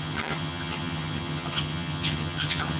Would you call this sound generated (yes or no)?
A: yes